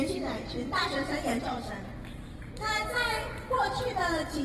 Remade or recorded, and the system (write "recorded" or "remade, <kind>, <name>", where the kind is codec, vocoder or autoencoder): remade, vocoder, BigVGAN v2